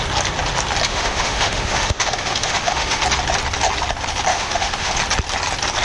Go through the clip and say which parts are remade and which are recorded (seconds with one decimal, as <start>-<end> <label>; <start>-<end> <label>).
0.0-0.9 recorded; 0.9-3.0 remade; 3.0-4.3 recorded; 4.3-4.9 remade; 4.9-5.8 recorded